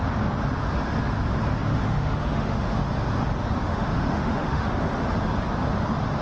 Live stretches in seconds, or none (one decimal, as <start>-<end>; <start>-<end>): 0.0-1.7; 2.9-3.6; 4.9-6.2